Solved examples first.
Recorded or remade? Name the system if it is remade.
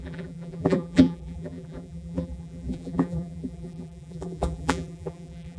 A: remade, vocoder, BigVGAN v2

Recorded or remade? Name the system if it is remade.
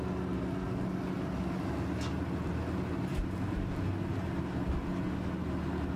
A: recorded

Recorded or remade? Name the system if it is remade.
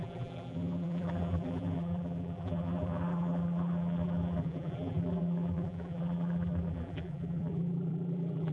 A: remade, vocoder, BigVGAN v2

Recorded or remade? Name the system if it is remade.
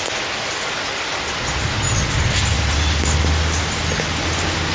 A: recorded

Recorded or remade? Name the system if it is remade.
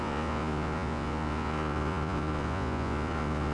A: remade, vocoder, Vocos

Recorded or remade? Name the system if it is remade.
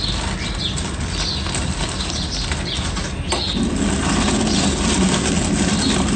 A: recorded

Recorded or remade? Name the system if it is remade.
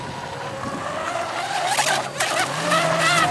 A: recorded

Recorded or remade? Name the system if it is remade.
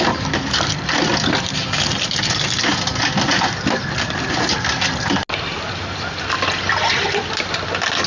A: recorded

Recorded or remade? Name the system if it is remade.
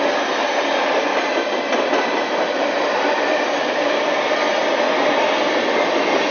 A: recorded